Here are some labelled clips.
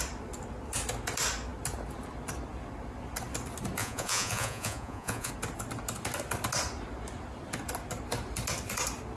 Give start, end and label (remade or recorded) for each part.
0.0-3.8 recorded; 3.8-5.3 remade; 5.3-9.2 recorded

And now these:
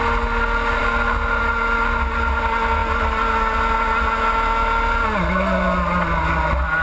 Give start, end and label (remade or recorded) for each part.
0.0-6.8 recorded